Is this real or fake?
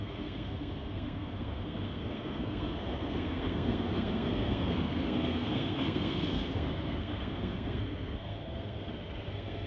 fake